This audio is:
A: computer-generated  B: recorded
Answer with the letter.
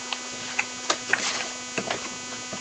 B